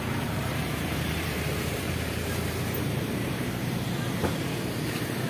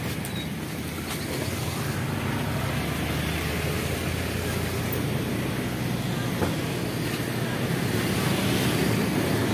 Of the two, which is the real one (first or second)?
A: second